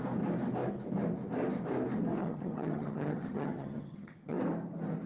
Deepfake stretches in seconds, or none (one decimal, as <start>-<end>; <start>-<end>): 2.2-4.4